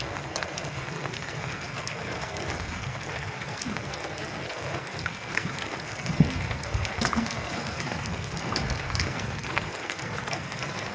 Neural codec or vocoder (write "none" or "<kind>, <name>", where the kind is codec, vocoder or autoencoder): codec, SNAC